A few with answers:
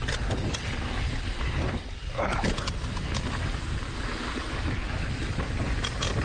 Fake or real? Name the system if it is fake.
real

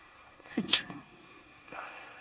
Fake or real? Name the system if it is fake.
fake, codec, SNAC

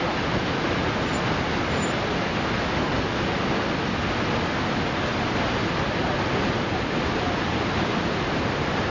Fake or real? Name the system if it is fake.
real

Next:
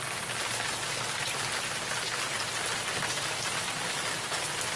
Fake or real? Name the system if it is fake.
real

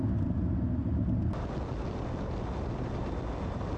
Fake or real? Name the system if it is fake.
real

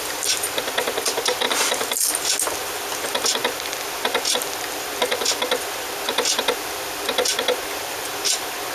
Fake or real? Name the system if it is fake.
real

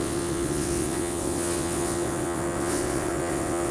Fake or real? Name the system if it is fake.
fake, vocoder, WaveNeXt